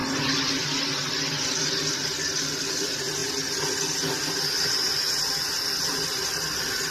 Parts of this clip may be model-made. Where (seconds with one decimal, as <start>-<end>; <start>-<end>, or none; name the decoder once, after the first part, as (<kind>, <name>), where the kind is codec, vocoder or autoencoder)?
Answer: 2.4-3.2 (vocoder, BigVGAN v2); 5.9-6.9

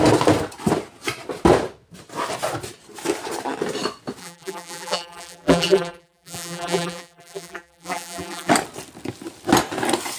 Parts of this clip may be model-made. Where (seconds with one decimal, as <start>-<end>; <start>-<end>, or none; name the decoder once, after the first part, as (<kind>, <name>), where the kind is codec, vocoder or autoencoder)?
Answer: 4.2-8.5 (vocoder, BigVGAN v2)